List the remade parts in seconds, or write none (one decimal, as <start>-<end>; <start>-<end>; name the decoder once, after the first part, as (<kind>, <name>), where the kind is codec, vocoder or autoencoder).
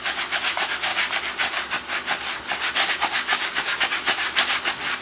3.3-3.8 (codec, DAC)